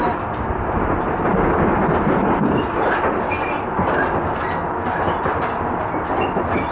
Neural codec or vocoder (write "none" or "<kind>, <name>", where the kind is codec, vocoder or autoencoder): none